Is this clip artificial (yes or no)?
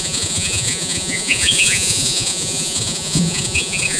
yes